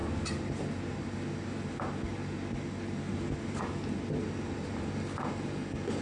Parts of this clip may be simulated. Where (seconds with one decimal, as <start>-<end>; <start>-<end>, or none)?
none